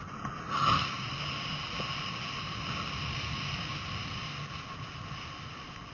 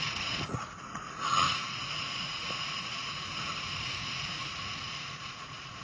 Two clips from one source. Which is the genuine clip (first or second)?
first